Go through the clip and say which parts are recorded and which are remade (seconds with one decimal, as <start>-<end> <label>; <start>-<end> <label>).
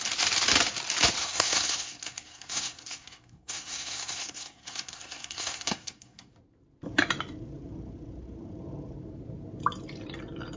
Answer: 0.0-1.2 recorded; 1.2-6.3 remade; 6.3-10.6 recorded